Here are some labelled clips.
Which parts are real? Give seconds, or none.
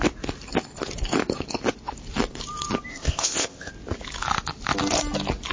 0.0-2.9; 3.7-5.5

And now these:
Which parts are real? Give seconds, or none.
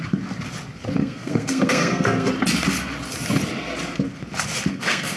0.0-1.0; 2.3-4.7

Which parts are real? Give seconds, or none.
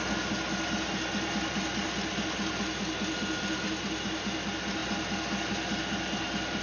0.0-6.6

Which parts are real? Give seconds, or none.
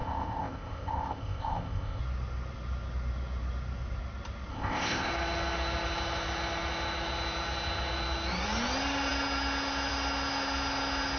2.0-4.5; 5.1-11.2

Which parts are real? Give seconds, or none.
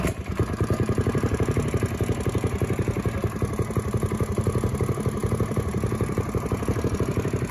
0.0-7.5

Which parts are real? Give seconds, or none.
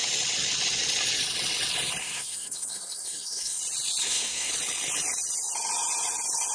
0.0-2.0; 3.6-4.0; 4.5-6.5